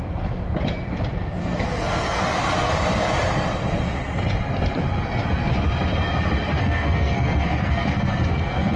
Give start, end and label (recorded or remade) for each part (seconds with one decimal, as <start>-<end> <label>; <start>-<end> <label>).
0.0-1.4 recorded; 1.4-2.2 remade; 2.2-6.5 recorded; 6.5-8.8 remade